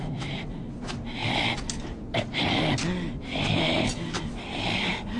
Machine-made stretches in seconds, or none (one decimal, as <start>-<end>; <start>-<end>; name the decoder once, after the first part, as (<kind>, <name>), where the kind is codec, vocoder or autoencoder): none